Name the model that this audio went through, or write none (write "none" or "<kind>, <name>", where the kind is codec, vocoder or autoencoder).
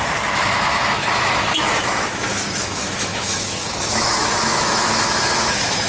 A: autoencoder, DAC-VAE